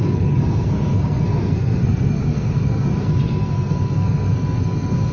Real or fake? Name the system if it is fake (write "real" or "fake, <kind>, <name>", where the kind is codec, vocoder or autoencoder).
fake, codec, SNAC